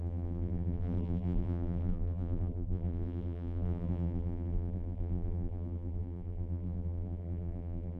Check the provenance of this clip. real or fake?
fake